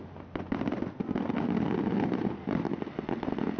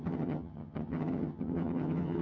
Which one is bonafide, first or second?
first